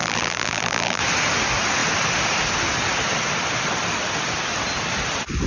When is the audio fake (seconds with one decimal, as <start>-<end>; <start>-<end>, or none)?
0.0-1.0